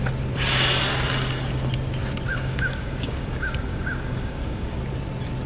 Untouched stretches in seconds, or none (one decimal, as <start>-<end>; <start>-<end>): 0.0-2.3; 4.8-5.5